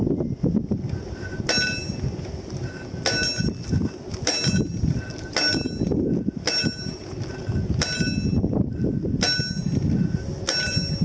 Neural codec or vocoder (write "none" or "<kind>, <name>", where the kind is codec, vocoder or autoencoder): none